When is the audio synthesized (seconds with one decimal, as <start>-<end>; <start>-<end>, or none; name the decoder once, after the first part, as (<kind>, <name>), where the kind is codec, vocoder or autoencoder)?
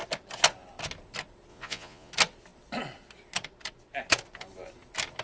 1.5-2.1 (vocoder, Vocos)